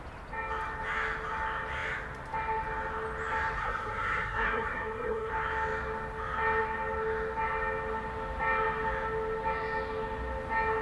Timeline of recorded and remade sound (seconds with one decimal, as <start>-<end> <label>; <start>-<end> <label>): 0.0-3.6 recorded; 3.6-5.3 remade; 5.3-10.8 recorded